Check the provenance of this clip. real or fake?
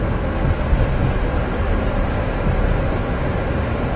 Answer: real